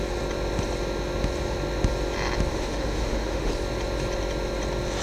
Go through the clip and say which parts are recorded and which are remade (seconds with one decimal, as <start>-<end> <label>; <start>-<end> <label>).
0.0-2.5 recorded; 2.5-3.5 remade; 3.5-5.0 recorded